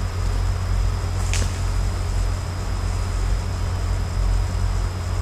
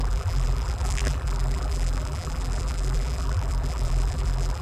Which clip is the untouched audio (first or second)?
first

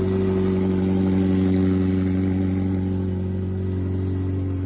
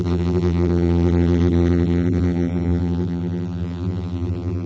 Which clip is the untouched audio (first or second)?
first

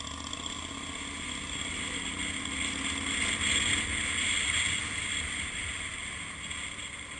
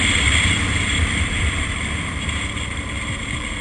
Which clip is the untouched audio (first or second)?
first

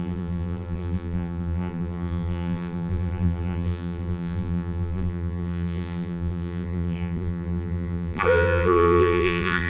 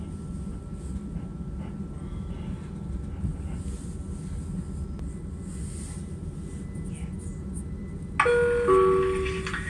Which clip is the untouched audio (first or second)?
second